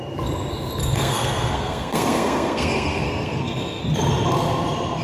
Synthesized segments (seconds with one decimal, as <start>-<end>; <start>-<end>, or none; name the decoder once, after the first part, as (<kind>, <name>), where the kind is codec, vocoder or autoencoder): 0.8-3.8 (codec, SNAC)